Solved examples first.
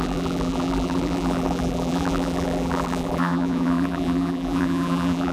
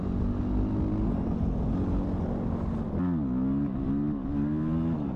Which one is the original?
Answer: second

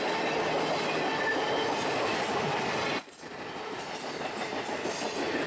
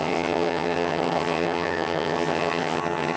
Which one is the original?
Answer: first